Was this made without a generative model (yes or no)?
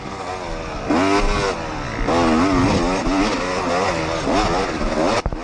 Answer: yes